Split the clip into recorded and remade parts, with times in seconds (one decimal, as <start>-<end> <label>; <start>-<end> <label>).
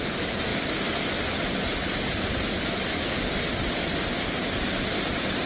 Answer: 0.0-5.5 recorded